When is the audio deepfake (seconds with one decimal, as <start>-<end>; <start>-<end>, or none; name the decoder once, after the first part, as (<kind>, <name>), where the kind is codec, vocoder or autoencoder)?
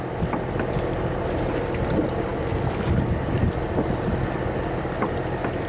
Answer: none